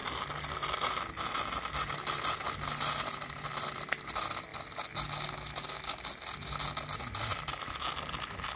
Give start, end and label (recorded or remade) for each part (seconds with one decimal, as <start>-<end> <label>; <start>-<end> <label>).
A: 0.0-8.6 recorded